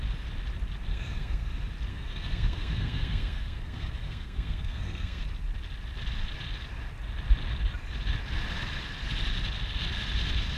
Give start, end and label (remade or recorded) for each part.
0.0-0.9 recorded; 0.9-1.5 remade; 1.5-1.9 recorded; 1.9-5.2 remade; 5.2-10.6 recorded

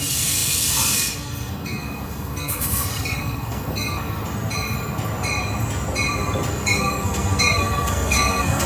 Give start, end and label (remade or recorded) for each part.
0.0-4.2 remade; 4.2-6.5 recorded; 6.5-8.7 remade

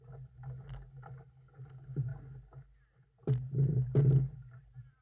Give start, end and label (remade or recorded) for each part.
0.0-5.0 recorded

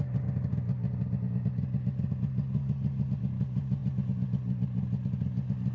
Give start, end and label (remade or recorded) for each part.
0.0-5.7 recorded

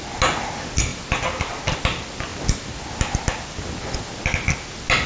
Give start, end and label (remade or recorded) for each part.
0.0-5.1 recorded

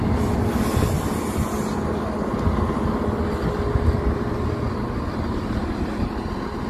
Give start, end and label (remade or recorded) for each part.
0.0-6.7 recorded

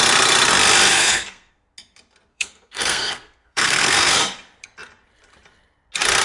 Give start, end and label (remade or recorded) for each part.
0.0-0.9 recorded; 0.9-1.5 remade; 1.5-2.3 recorded; 2.3-4.2 remade; 4.2-6.2 recorded

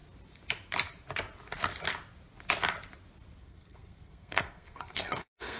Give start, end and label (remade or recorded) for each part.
0.0-3.4 recorded; 3.4-5.6 remade